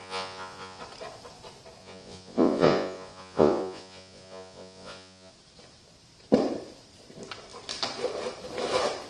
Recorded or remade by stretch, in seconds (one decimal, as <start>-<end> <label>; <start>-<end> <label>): 0.0-0.8 remade; 0.8-1.8 recorded; 1.8-5.3 remade; 5.3-9.1 recorded